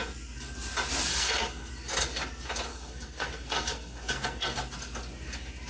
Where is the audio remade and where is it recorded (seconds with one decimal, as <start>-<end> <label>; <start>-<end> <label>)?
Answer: 0.0-1.1 recorded; 1.1-1.7 remade; 1.7-2.7 recorded; 2.7-4.6 remade; 4.6-5.7 recorded